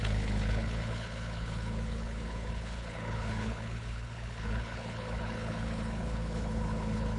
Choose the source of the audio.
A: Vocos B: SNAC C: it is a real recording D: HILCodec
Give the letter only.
D